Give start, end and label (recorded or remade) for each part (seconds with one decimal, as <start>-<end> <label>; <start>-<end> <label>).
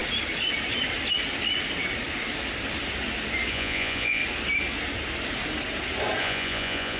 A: 0.0-3.5 recorded; 3.5-4.2 remade; 4.2-6.2 recorded; 6.2-7.0 remade